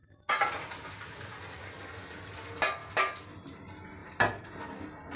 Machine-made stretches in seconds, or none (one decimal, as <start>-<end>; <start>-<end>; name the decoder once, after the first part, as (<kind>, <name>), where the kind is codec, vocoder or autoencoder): 4.0-4.7 (vocoder, BigVGAN v2)